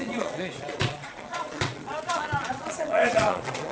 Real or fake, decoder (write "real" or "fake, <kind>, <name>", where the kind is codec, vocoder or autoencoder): fake, vocoder, Vocos